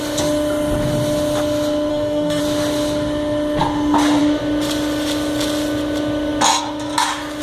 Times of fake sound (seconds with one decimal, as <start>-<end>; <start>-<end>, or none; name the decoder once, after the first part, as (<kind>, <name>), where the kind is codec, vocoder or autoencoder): 1.9-2.4 (codec, DAC)